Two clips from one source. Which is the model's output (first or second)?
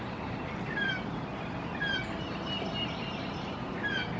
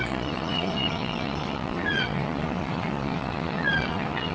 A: second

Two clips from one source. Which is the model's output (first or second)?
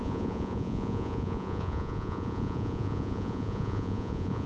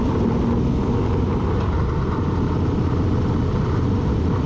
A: first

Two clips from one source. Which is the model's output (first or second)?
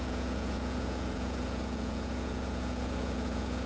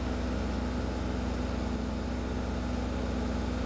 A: first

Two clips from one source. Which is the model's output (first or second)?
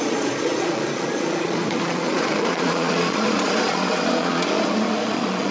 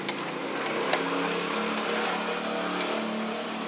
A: first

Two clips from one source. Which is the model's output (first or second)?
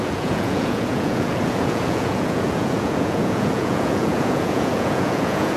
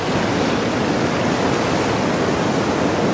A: first